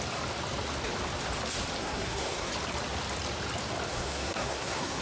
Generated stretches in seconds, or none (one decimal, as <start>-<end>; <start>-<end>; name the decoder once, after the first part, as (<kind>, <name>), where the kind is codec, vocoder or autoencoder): 1.8-2.5 (codec, SNAC); 3.9-5.0